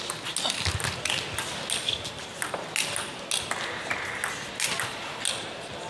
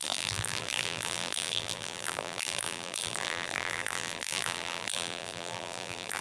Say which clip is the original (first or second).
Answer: first